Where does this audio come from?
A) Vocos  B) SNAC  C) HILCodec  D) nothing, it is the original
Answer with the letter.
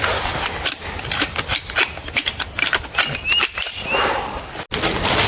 D